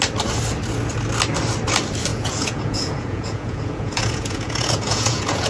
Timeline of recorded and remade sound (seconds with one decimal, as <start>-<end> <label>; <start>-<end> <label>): 0.0-2.1 recorded; 2.1-5.5 remade

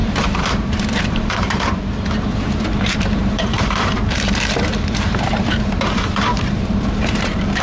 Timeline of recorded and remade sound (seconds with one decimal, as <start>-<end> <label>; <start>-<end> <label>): 0.0-7.6 remade

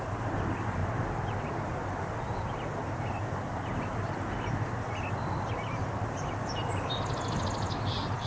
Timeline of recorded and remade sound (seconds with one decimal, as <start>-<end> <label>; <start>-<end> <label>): 0.0-8.3 recorded

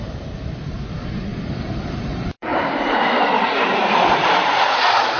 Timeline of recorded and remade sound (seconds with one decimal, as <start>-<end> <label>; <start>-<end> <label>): 0.0-5.2 remade

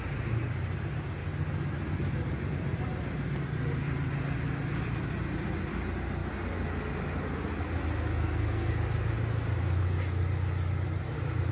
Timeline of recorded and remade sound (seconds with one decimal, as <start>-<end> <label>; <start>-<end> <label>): 0.0-8.2 recorded; 8.2-8.7 remade; 8.7-11.5 recorded

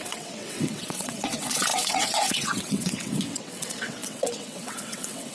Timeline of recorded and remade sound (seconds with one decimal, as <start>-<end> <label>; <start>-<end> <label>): 0.0-5.3 remade

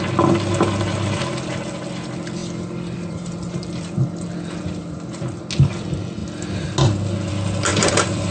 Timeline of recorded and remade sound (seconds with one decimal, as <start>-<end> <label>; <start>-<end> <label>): 0.0-2.4 recorded; 2.4-5.4 remade; 5.4-7.7 recorded; 7.7-8.3 remade

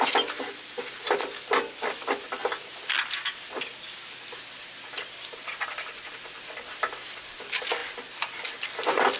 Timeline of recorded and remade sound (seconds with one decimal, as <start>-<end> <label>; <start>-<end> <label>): 0.0-9.2 recorded